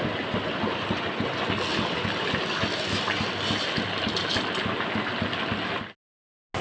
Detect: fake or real real